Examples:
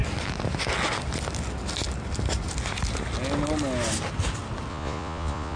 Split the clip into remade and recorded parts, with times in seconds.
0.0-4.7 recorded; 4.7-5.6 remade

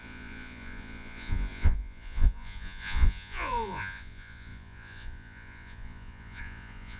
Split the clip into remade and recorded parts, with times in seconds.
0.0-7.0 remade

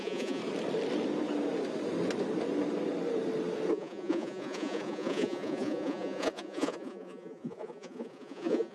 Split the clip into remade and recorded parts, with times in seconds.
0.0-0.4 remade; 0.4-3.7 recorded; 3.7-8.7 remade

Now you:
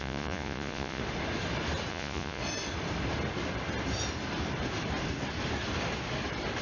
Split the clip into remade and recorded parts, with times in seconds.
0.0-1.0 remade; 1.0-1.9 recorded; 1.9-2.4 remade; 2.4-6.6 recorded

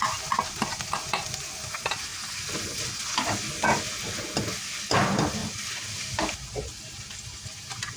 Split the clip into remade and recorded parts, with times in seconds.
0.0-8.0 recorded